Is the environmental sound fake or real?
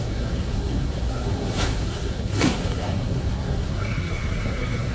fake